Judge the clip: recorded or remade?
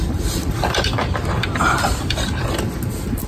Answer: remade